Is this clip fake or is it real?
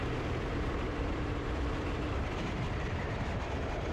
fake